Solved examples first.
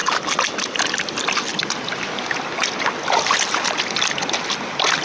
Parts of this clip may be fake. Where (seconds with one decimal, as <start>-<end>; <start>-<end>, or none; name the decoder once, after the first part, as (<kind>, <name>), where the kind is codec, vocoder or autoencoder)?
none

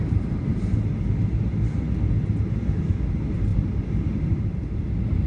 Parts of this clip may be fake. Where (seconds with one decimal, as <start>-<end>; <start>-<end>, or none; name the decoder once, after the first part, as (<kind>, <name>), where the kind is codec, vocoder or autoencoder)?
none

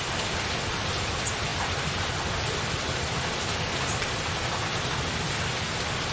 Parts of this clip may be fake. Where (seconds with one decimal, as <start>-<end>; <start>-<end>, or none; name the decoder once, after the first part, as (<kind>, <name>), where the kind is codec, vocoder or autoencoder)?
none

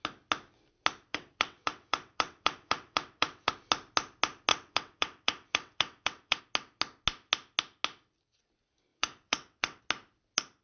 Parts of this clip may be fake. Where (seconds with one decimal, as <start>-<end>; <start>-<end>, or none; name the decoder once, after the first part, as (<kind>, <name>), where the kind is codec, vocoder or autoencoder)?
1.1-3.5 (vocoder, WaveNeXt); 4.5-6.4; 8.9-9.8

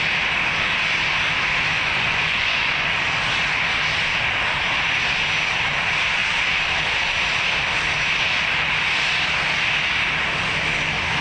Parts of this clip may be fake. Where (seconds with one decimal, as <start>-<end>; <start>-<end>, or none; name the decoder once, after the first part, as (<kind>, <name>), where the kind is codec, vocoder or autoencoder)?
1.7-3.2 (vocoder, Vocos)